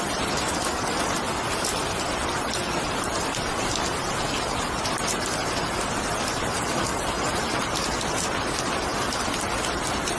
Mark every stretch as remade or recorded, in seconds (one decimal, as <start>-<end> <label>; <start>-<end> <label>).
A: 0.0-6.9 recorded; 6.9-7.5 remade; 7.5-10.2 recorded